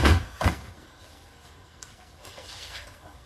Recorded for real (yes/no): no